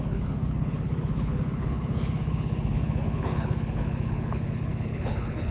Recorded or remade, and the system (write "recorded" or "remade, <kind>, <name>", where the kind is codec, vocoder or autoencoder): remade, codec, HILCodec